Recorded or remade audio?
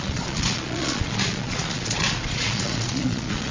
remade